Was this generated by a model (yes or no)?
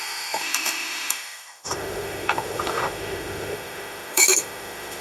yes